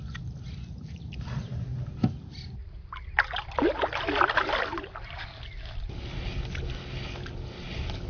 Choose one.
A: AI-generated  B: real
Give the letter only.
B